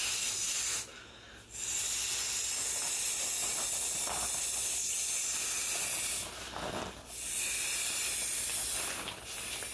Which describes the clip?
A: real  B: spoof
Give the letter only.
A